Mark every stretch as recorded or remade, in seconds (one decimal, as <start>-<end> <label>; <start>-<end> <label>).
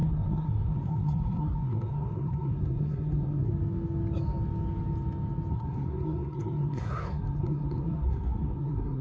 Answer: 0.0-3.5 remade; 3.5-5.5 recorded; 5.5-9.0 remade